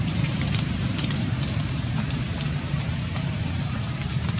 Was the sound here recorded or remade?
remade